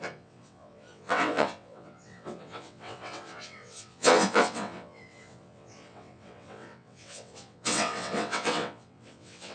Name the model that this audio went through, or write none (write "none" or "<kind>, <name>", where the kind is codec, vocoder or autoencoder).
vocoder, WaveNeXt